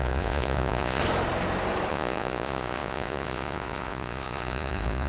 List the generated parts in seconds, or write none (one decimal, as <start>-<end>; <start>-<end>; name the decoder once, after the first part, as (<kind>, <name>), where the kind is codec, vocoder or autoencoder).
0.0-1.0 (vocoder, Vocos); 1.9-5.1